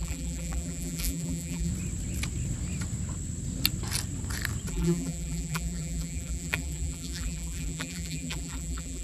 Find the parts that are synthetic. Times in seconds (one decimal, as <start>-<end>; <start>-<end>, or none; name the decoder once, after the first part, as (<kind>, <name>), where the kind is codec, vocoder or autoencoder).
0.0-1.7 (vocoder, BigVGAN v2); 4.7-9.0